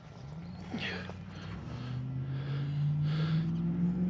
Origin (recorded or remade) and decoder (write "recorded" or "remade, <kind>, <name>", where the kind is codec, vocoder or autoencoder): recorded